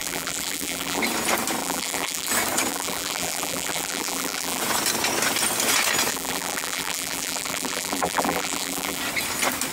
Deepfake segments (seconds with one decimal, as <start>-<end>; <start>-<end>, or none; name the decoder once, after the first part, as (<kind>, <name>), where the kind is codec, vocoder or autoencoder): 0.0-1.0 (vocoder, BigVGAN v2); 1.6-2.3; 2.7-4.6; 6.1-9.0